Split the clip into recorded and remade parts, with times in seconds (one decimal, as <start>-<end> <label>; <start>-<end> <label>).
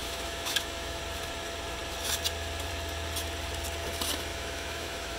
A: 0.0-1.0 remade; 1.0-4.3 recorded; 4.3-5.2 remade